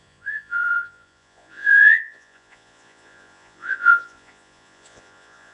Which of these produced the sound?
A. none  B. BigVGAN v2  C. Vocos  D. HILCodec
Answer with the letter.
C